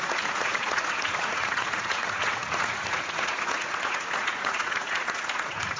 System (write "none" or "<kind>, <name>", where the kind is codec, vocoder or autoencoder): vocoder, Vocos